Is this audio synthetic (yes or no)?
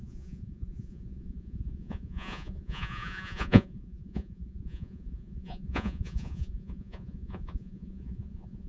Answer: yes